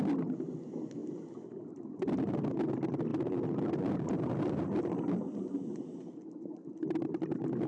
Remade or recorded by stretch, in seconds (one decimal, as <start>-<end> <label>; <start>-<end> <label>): 0.0-7.7 recorded